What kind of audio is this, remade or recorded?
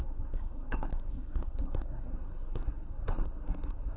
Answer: remade